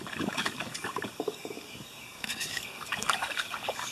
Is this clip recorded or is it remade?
remade